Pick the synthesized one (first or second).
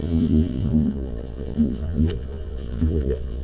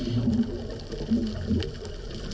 first